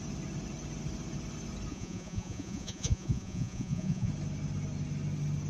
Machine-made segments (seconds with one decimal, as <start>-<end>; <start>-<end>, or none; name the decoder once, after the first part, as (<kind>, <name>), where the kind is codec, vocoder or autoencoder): 1.7-4.1 (vocoder, Vocos)